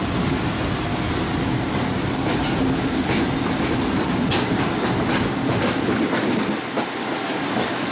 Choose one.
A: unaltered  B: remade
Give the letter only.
A